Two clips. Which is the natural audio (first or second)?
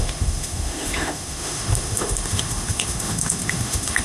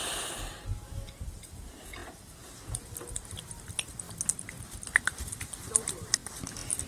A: second